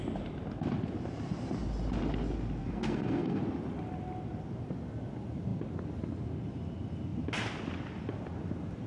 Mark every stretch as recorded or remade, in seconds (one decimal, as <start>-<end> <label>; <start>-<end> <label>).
0.0-2.6 recorded; 2.6-3.4 remade; 3.4-8.9 recorded